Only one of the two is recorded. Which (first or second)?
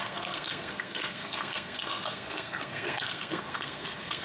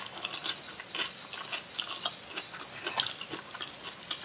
second